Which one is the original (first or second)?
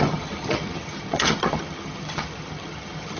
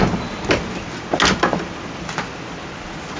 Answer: second